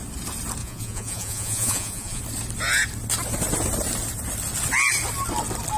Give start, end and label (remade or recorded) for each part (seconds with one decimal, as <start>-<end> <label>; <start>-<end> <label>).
0.0-0.6 recorded; 0.6-2.2 remade; 2.2-5.8 recorded